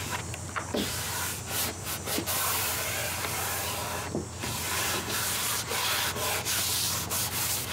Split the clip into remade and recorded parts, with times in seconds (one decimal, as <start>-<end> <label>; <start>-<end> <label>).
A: 0.0-3.0 remade; 3.0-7.1 recorded; 7.1-7.7 remade